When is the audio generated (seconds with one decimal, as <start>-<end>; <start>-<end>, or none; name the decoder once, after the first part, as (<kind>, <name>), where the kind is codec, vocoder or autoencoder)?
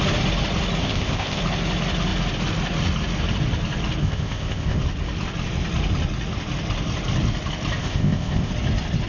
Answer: 0.8-1.4 (codec, ZipCodec); 4.0-4.8; 7.8-8.5